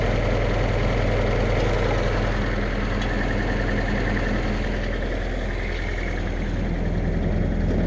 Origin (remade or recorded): recorded